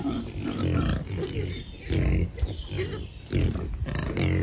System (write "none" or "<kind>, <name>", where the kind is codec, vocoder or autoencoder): none